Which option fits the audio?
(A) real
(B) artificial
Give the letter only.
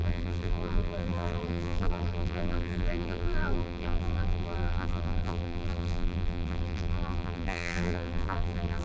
B